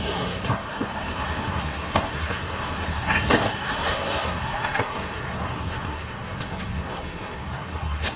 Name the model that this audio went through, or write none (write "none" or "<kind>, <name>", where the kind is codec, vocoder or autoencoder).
codec, SNAC